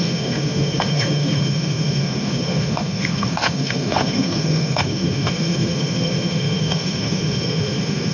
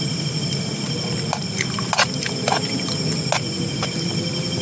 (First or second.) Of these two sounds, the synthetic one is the first